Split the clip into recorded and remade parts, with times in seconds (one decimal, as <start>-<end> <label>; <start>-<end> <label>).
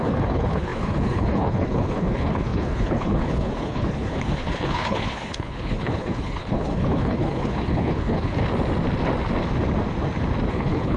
0.0-8.4 remade; 8.4-10.5 recorded; 10.5-11.0 remade